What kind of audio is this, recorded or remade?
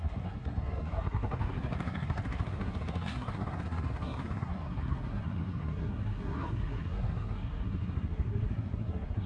remade